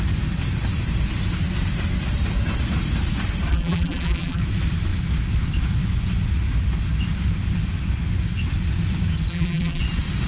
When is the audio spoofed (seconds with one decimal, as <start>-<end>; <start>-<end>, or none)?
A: 3.5-4.4; 9.3-9.8